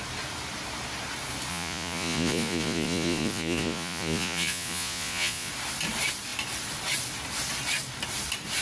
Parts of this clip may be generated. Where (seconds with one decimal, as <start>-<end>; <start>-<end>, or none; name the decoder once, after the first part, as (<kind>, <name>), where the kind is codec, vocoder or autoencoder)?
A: 1.5-5.5 (vocoder, Vocos)